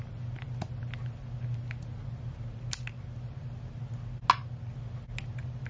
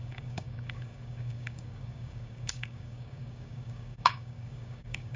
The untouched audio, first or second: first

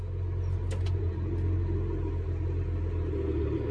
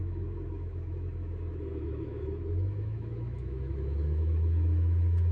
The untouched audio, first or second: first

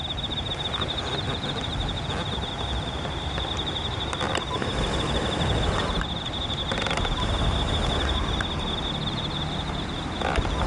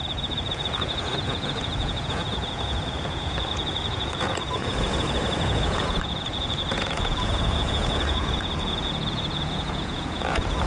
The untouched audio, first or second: first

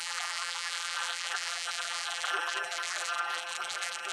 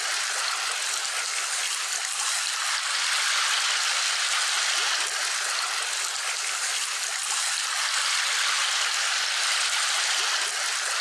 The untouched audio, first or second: second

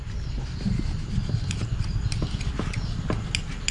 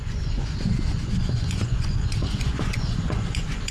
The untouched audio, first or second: first